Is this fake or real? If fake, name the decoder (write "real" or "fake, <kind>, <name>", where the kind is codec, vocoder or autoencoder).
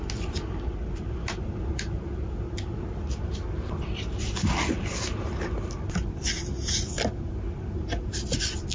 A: real